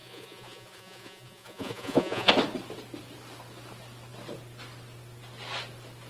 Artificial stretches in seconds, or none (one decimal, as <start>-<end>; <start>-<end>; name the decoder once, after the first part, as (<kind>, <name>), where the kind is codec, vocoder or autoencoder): 0.0-2.3 (vocoder, Vocos)